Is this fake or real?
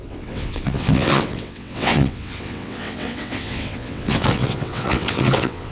fake